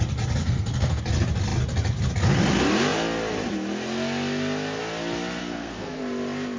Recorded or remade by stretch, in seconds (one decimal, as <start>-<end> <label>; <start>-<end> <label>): 0.0-0.4 recorded; 0.4-1.0 remade; 1.0-5.4 recorded; 5.4-6.0 remade; 6.0-6.6 recorded